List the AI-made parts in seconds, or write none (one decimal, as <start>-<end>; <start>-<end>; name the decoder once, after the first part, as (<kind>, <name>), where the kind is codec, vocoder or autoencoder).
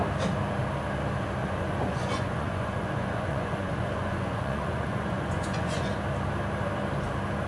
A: 1.4-5.9 (vocoder, Vocos)